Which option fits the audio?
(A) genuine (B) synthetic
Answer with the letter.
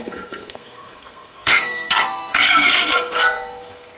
B